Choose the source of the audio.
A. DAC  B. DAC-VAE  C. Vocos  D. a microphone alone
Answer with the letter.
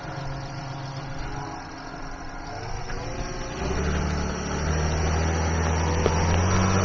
D